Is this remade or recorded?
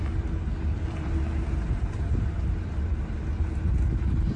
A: recorded